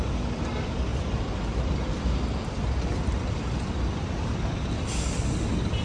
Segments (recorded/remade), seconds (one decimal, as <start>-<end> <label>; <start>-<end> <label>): 0.0-0.9 recorded; 0.9-4.4 remade; 4.4-5.8 recorded